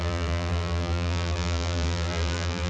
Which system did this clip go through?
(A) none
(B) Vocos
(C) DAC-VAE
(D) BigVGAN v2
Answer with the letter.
D